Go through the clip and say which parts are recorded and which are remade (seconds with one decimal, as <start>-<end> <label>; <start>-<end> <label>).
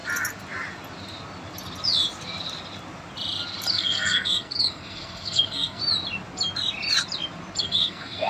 0.0-3.7 recorded; 3.7-5.8 remade; 5.8-7.6 recorded; 7.6-8.3 remade